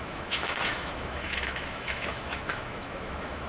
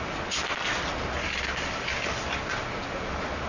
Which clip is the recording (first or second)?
second